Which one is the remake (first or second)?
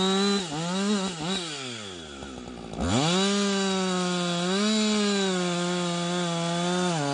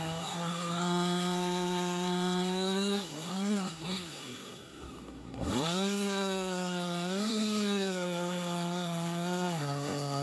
second